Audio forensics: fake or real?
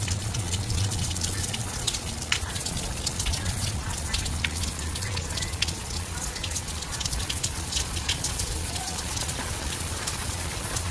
fake